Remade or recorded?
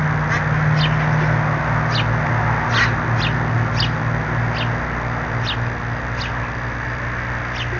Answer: recorded